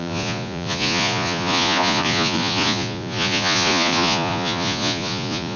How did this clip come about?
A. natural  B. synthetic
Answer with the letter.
B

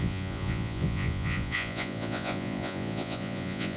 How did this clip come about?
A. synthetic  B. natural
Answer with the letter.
A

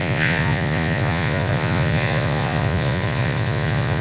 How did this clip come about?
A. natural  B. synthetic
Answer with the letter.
B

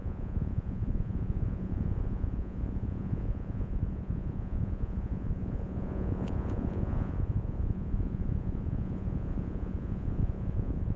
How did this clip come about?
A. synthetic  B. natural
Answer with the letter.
A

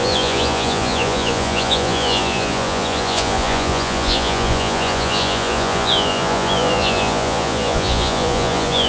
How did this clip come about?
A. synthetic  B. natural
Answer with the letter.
A